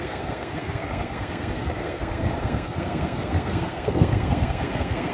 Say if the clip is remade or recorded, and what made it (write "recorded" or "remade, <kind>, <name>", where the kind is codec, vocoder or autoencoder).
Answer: remade, codec, SNAC